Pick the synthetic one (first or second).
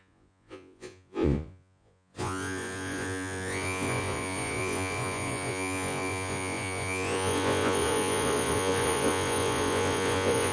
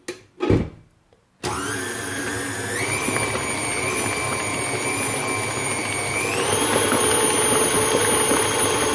first